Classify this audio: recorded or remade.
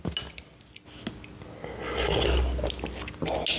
recorded